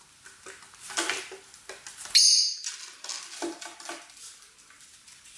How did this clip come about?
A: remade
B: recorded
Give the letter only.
B